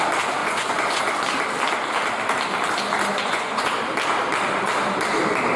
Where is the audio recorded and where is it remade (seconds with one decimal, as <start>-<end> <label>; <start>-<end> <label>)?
0.0-0.4 recorded; 0.4-1.0 remade; 1.0-3.1 recorded; 3.1-3.7 remade; 3.7-5.6 recorded